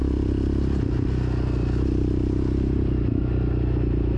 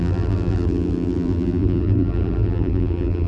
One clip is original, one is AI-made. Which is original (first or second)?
first